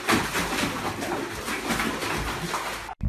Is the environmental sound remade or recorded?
recorded